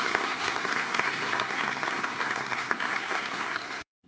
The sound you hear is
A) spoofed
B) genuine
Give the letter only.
A